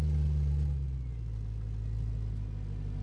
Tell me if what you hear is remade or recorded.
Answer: recorded